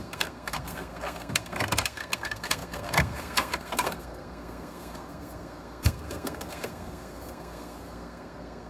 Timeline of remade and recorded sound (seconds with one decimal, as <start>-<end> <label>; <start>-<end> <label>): 0.0-8.7 remade